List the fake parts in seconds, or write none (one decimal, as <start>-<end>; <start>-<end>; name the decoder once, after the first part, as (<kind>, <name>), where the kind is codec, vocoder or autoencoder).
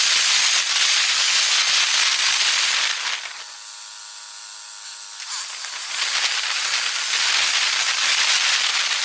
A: none